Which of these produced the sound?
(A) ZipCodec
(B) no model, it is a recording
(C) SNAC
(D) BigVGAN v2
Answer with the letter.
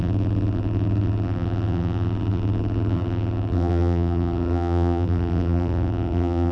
D